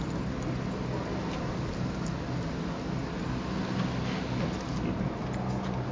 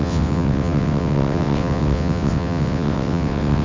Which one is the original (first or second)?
first